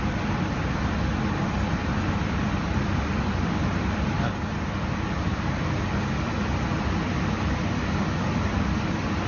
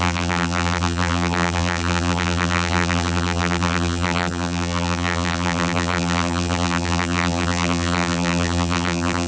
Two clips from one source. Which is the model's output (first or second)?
second